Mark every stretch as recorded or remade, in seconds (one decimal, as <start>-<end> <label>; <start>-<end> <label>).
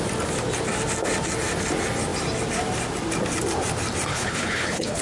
0.0-4.1 recorded; 4.1-5.0 remade